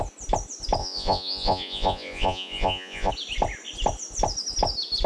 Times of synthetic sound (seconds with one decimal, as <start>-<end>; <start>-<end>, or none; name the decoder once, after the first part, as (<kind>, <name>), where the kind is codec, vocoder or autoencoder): 0.8-3.1 (vocoder, Vocos)